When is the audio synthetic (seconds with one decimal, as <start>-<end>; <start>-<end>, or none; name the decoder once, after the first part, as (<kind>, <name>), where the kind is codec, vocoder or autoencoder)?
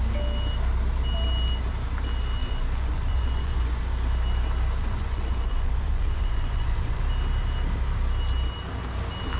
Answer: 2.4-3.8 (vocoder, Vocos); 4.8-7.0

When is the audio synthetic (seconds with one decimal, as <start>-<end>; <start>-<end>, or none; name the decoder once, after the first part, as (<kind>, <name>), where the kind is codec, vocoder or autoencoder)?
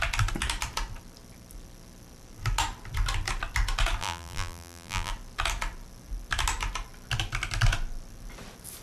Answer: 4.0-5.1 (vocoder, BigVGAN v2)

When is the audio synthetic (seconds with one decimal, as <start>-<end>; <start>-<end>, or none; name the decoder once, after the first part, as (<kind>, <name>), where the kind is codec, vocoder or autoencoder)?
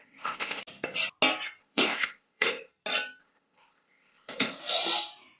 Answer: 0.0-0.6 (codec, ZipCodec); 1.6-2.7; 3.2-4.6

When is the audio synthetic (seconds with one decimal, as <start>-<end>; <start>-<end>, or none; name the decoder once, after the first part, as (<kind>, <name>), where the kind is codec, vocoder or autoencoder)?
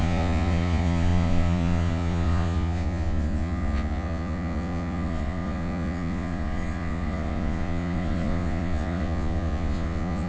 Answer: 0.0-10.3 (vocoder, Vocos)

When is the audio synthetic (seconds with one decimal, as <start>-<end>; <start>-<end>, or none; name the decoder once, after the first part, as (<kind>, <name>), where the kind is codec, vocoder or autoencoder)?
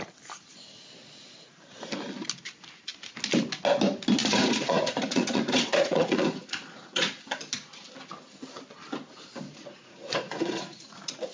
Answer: 4.2-7.2 (vocoder, Vocos); 9.5-11.3